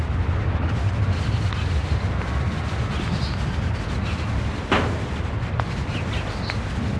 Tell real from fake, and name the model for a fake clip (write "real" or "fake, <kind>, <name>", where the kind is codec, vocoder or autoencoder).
real